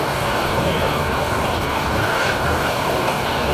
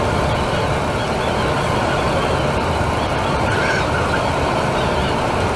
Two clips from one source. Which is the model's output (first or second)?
first